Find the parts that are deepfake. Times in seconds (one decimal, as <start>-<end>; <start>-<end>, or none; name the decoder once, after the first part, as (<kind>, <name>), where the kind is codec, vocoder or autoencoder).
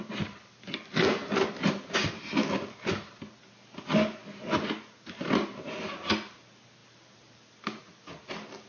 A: 1.2-2.1 (vocoder, BigVGAN v2); 6.8-8.1